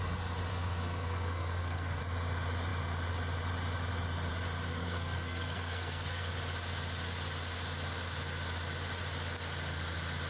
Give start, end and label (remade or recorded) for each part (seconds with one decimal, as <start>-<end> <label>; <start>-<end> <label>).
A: 0.0-0.5 recorded; 0.5-2.0 remade; 2.0-4.7 recorded; 4.7-6.3 remade; 6.3-10.3 recorded